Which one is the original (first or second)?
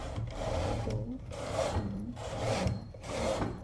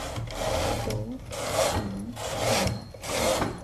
second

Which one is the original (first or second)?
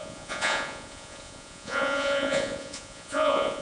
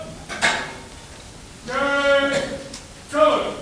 second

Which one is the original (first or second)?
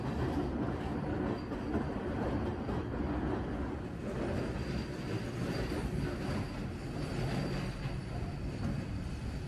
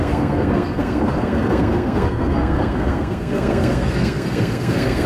first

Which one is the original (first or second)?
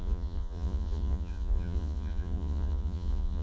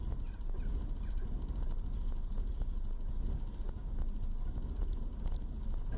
second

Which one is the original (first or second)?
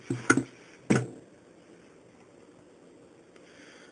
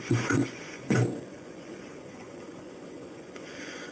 first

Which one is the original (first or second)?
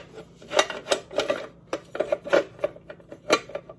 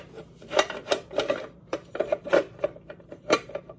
first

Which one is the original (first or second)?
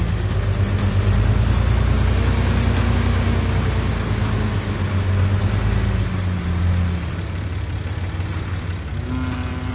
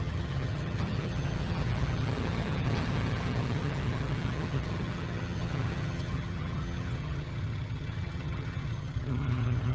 first